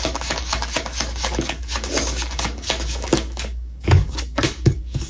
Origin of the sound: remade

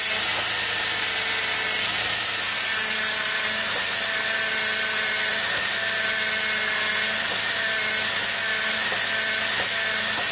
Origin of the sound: recorded